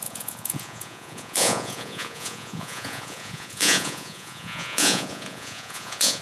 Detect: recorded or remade remade